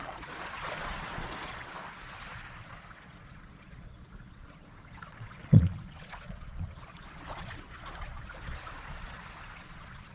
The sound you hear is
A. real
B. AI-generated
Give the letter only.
B